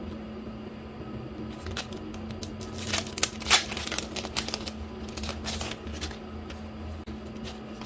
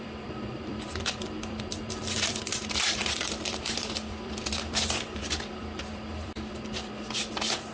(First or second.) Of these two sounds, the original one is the first